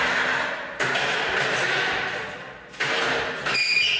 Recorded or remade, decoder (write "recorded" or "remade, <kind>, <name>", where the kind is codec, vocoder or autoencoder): recorded